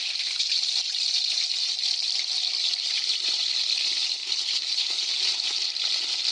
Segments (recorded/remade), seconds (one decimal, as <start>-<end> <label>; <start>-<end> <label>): 0.0-4.2 recorded; 4.2-5.1 remade; 5.1-6.3 recorded

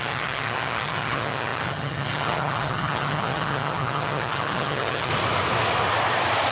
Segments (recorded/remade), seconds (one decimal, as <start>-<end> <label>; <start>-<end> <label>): 0.0-5.1 remade; 5.1-6.5 recorded

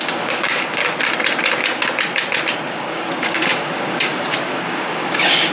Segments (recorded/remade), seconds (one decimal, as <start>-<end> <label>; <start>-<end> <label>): 0.0-0.8 remade; 0.8-2.7 recorded; 2.7-5.5 remade